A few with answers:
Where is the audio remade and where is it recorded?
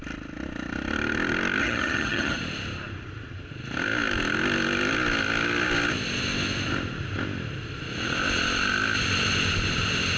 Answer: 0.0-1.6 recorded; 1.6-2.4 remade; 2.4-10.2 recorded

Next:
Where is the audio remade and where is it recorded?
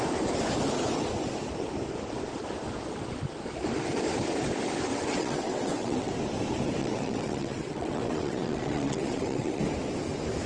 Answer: 0.0-4.9 recorded; 4.9-6.1 remade; 6.1-6.8 recorded; 6.8-9.6 remade; 9.6-10.5 recorded